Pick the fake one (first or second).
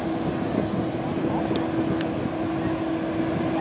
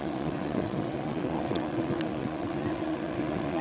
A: second